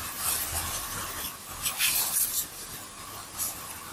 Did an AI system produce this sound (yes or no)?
no